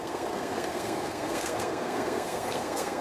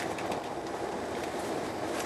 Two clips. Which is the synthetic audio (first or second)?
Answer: first